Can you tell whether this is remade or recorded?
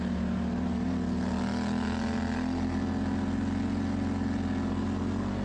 recorded